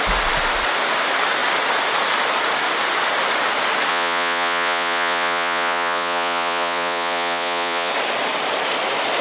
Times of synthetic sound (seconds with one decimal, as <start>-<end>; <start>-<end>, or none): 3.9-7.9

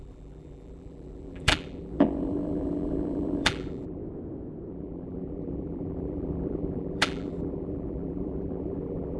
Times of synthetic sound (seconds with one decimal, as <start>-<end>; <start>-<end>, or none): 0.0-4.0; 4.7-9.2

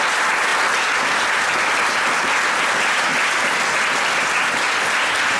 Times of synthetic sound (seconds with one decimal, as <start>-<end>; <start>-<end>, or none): none

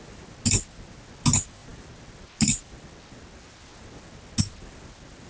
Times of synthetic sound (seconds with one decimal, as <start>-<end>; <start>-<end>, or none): none

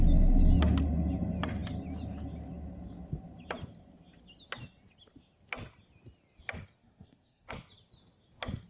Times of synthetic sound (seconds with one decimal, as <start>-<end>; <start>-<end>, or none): 6.8-7.5

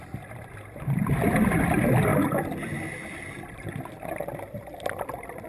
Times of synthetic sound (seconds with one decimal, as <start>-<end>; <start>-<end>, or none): none

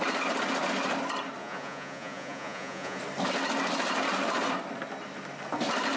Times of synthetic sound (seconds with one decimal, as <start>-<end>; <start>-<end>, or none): 1.4-3.0